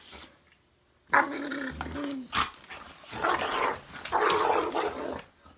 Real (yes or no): yes